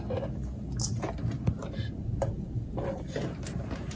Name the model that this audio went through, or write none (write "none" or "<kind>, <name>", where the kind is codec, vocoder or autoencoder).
none